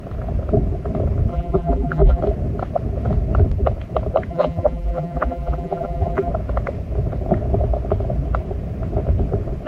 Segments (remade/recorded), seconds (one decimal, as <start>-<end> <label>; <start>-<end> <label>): 0.0-1.3 recorded; 1.3-2.2 remade; 2.2-4.3 recorded; 4.3-6.3 remade; 6.3-9.7 recorded